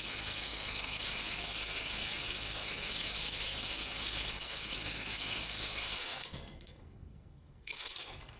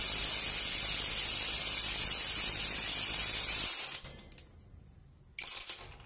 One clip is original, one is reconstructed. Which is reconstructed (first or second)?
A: first